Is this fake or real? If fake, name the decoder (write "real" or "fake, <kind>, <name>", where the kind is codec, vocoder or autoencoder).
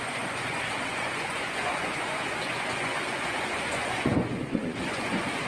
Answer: fake, vocoder, Vocos